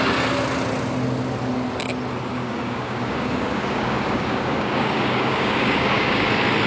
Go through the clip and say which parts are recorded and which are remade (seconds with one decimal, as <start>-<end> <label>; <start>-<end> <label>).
0.0-2.3 recorded; 2.3-6.3 remade; 6.3-6.7 recorded